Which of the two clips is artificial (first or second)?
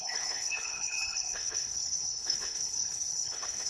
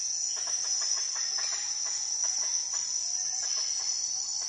first